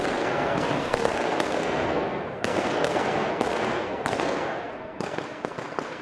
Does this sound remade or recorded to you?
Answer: remade